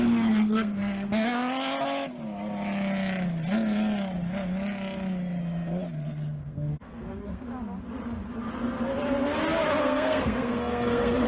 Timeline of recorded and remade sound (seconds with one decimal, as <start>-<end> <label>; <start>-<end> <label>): 0.0-1.4 remade; 1.4-5.9 recorded; 5.9-7.5 remade; 7.5-9.8 recorded; 9.8-11.3 remade